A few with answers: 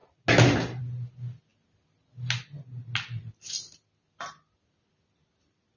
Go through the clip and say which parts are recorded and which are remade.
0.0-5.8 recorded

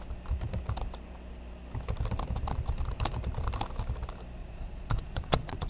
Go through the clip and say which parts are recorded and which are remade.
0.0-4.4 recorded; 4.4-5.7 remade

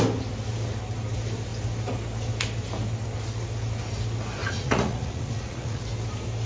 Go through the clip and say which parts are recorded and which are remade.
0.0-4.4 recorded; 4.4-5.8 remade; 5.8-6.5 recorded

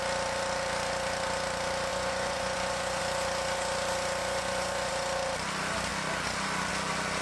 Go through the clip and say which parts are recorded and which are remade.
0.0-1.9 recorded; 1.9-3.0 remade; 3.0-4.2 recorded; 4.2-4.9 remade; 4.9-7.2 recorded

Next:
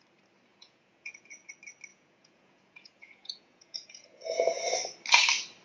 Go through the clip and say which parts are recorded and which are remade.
0.0-0.5 recorded; 0.5-1.5 remade; 1.5-1.9 recorded; 1.9-4.6 remade; 4.6-5.6 recorded

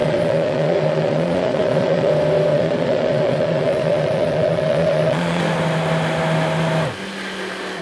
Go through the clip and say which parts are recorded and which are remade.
0.0-2.1 remade; 2.1-2.5 recorded; 2.5-5.4 remade; 5.4-7.8 recorded

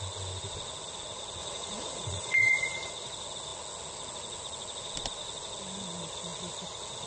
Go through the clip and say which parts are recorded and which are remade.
0.0-1.4 recorded; 1.4-2.9 remade; 2.9-7.1 recorded